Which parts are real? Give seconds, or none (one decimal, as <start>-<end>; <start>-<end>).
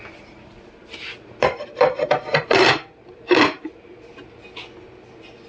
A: 0.0-0.8; 3.9-5.5